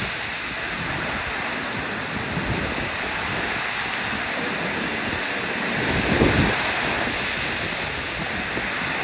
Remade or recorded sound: recorded